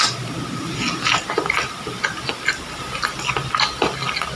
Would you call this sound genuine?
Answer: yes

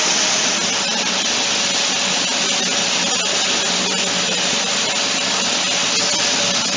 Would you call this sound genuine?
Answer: yes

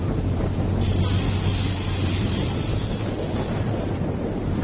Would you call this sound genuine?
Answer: yes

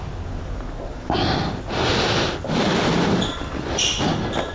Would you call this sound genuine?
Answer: yes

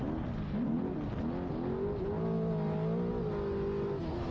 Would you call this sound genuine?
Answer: yes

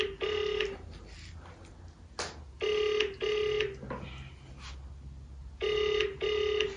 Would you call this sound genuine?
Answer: yes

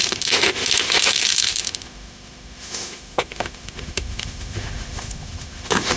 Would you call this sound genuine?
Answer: no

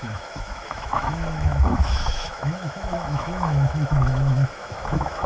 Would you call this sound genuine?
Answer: no